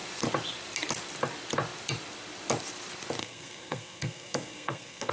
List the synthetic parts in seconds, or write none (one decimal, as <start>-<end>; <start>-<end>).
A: 3.2-5.1